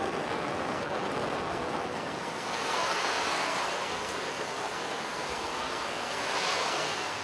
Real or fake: fake